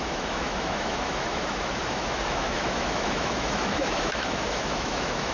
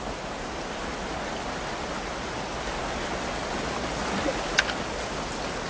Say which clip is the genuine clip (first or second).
second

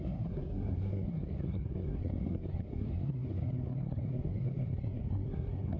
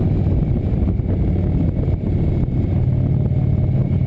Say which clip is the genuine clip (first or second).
second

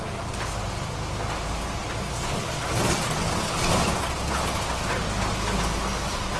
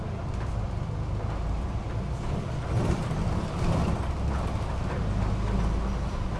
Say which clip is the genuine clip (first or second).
first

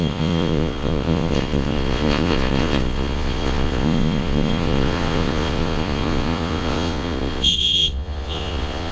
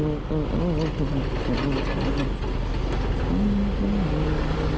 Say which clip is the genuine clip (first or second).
second